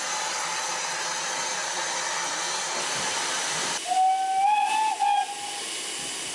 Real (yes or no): yes